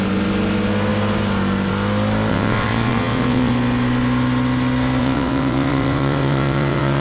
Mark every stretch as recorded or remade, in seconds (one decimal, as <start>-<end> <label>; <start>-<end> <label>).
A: 0.0-2.3 recorded; 2.3-3.5 remade; 3.5-5.0 recorded; 5.0-7.0 remade